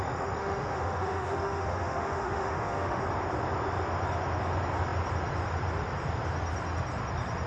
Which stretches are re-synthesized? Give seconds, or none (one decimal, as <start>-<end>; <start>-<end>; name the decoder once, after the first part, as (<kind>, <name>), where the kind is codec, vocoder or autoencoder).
0.4-3.0 (autoencoder, DAC-VAE)